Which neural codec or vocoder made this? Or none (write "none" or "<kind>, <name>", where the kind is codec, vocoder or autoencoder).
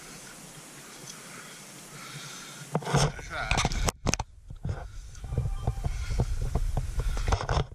none